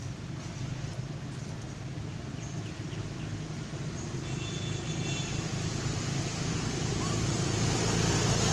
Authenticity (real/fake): real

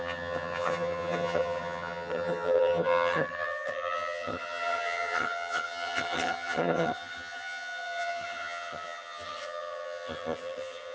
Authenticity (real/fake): fake